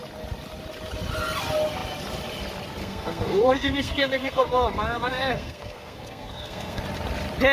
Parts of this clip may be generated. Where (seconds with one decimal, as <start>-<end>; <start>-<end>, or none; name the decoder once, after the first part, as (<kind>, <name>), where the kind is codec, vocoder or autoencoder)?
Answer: 2.8-6.8 (codec, SNAC)